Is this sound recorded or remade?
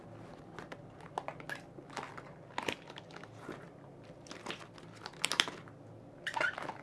recorded